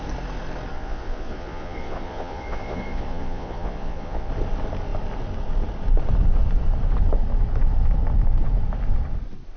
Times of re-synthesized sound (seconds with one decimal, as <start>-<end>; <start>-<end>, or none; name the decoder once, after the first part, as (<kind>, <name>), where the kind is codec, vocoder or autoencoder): 0.7-4.3 (vocoder, Vocos)